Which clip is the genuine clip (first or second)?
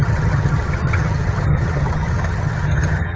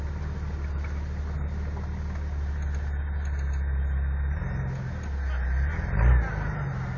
second